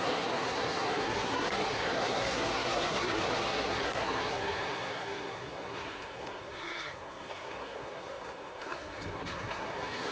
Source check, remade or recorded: remade